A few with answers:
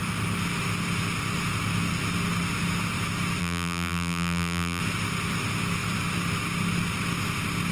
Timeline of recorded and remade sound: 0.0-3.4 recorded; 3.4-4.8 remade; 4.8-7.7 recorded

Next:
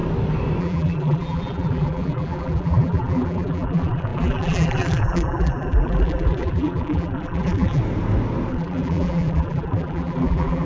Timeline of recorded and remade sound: 0.0-0.6 recorded; 0.6-7.8 remade; 7.8-8.5 recorded; 8.5-10.7 remade

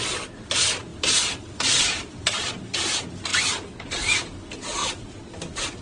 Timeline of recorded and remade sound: 0.0-0.9 recorded; 0.9-2.5 remade; 2.5-4.8 recorded; 4.8-5.8 remade